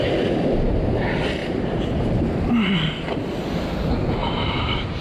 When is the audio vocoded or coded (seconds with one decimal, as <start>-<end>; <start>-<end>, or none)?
1.4-2.1; 4.2-5.0